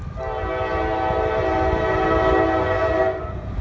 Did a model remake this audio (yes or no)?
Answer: no